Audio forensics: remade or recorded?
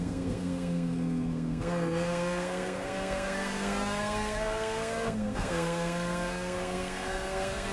remade